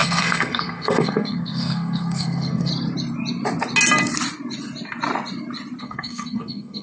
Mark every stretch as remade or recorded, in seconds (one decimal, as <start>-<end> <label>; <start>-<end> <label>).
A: 0.0-2.7 remade; 2.7-5.8 recorded; 5.8-6.8 remade